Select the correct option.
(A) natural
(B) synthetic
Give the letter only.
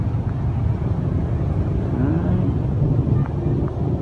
A